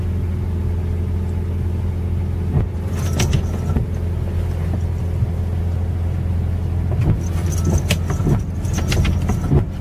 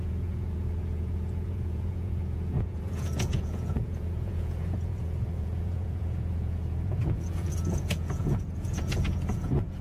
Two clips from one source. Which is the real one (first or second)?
first